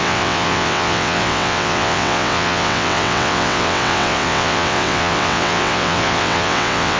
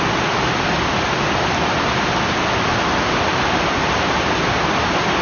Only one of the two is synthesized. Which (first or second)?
first